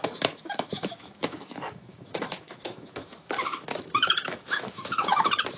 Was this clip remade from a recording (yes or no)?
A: yes